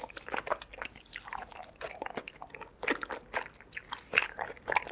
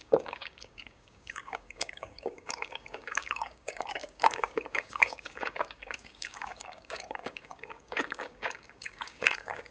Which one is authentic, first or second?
first